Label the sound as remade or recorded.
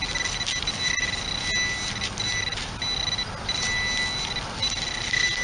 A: recorded